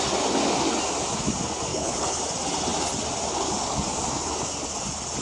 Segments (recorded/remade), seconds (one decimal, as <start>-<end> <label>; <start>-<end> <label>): 0.0-1.7 recorded; 1.7-2.2 remade; 2.2-5.2 recorded